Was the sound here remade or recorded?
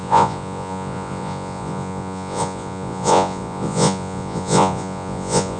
remade